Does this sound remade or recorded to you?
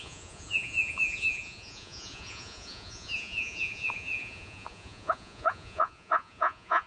remade